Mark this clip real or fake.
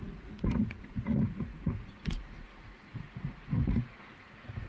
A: fake